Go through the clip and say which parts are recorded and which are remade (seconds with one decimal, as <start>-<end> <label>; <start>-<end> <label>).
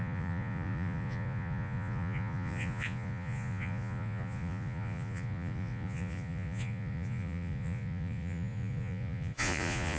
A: 0.0-10.0 remade